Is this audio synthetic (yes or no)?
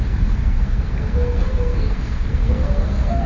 yes